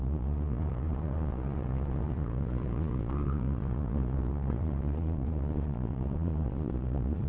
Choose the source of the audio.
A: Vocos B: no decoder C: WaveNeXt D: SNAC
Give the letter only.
A